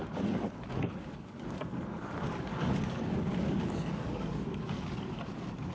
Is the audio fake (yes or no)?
yes